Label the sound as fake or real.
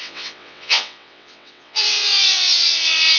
fake